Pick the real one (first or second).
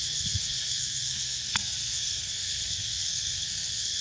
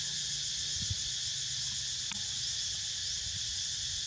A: second